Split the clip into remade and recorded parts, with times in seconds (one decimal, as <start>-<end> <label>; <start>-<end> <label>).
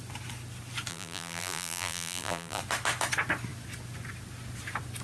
0.0-0.9 recorded; 0.9-2.6 remade; 2.6-5.0 recorded